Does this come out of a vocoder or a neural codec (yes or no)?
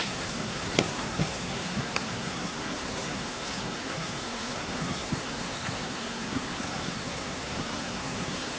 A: yes